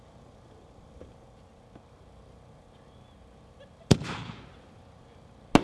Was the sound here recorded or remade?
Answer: recorded